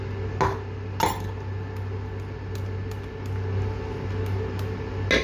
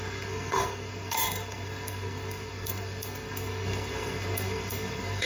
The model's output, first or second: second